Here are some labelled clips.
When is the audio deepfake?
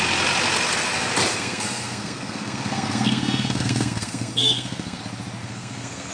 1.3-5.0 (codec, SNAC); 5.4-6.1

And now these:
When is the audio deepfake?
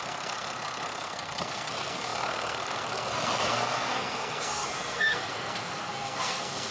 0.0-6.7 (codec, SNAC)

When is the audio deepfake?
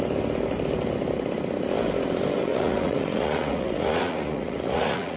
2.4-5.2 (vocoder, Vocos)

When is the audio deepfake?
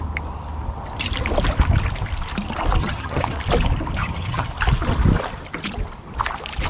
2.8-3.3 (vocoder, HiFi-GAN); 4.0-4.5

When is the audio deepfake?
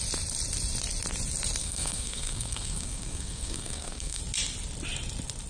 1.6-4.2 (codec, SNAC)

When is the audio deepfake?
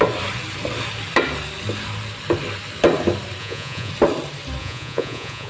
3.4-3.9 (vocoder, Vocos); 4.6-5.5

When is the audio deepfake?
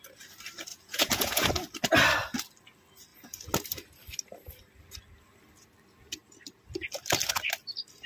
0.7-1.5 (vocoder, Vocos)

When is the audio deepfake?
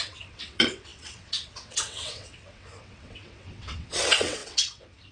0.0-5.1 (vocoder, WaveNeXt)